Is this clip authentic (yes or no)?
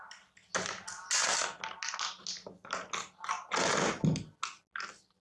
yes